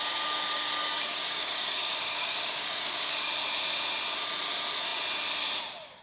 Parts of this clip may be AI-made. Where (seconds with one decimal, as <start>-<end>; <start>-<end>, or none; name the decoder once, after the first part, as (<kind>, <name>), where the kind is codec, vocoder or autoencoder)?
0.8-3.3 (codec, DAC)